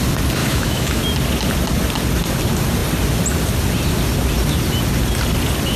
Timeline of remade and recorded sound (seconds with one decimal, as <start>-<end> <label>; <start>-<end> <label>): 0.0-0.4 recorded; 0.4-1.0 remade; 1.0-5.8 recorded